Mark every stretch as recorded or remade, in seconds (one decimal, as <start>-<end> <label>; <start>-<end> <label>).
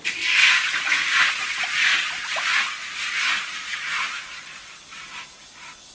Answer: 0.0-0.4 recorded; 0.4-1.2 remade; 1.2-5.9 recorded